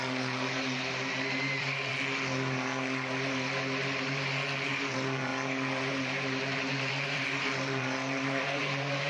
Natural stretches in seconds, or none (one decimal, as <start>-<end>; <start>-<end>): 1.9-4.7; 5.3-5.9